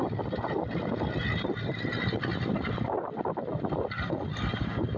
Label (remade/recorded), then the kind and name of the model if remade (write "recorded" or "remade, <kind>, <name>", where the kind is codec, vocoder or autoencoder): recorded